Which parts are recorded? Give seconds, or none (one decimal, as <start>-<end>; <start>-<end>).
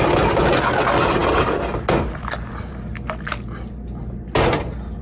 0.0-5.0